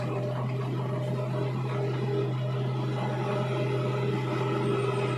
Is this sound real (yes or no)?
yes